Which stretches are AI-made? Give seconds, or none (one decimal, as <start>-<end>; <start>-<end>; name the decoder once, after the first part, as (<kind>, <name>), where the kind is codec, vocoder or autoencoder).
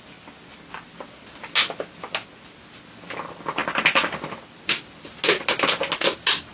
none